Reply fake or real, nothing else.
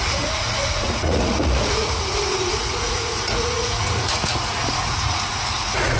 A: fake